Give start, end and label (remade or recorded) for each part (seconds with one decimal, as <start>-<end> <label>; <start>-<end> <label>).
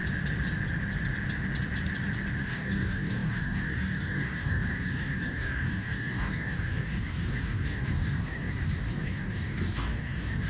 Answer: 0.0-2.4 recorded; 2.4-10.5 remade